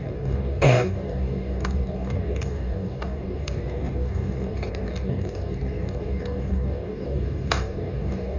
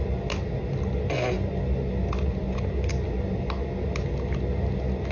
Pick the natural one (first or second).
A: second